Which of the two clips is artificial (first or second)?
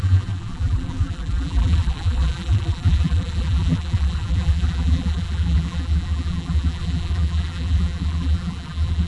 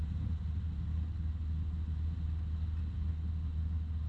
first